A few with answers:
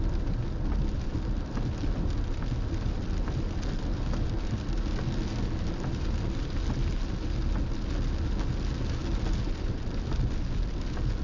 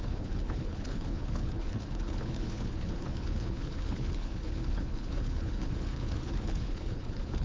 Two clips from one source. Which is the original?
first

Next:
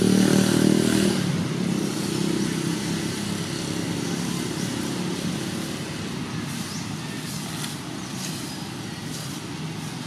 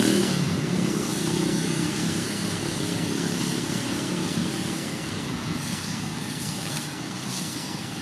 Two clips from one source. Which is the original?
first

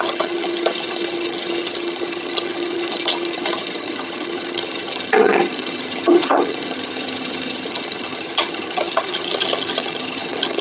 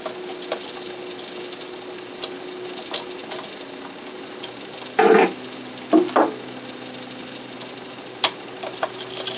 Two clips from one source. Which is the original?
second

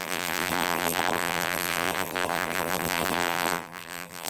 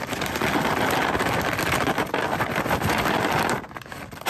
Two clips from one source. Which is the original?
second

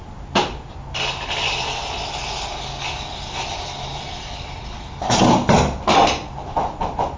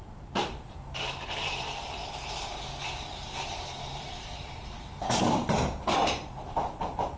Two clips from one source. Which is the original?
first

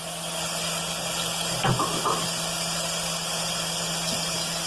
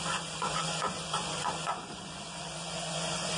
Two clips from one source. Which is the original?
first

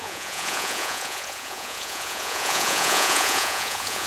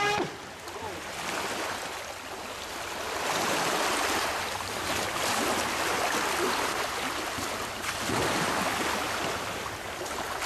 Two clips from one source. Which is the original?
second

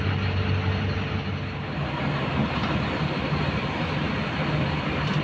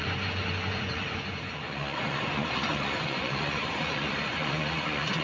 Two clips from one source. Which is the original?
first